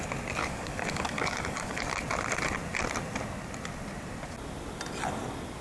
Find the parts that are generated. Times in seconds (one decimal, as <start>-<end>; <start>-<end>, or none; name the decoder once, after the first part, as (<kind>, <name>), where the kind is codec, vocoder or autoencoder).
0.4-1.8 (codec, DAC)